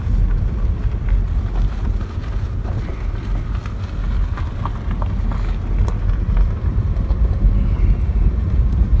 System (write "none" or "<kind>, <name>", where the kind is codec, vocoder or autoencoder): none